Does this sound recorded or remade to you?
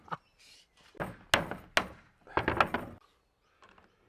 recorded